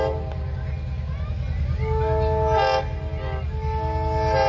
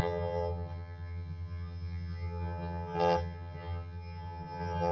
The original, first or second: first